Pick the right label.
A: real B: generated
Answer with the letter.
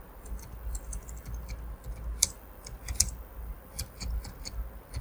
A